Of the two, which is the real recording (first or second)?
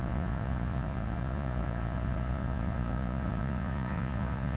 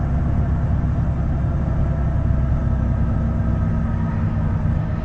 second